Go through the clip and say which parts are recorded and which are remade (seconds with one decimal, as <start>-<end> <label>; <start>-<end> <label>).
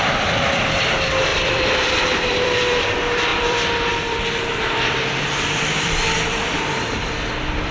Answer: 0.0-1.3 recorded; 1.3-2.8 remade; 2.8-3.3 recorded; 3.3-6.6 remade; 6.6-7.7 recorded